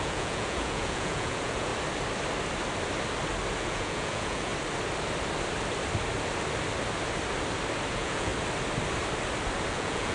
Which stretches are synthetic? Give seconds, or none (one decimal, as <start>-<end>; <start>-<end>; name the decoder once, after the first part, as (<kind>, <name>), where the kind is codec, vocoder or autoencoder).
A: 0.0-1.7 (vocoder, Vocos); 3.6-4.5; 7.9-8.3; 9.7-10.1